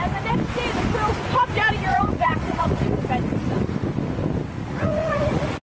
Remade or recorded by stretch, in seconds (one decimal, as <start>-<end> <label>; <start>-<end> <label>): 0.0-1.9 recorded; 1.9-3.0 remade; 3.0-4.6 recorded; 4.6-5.6 remade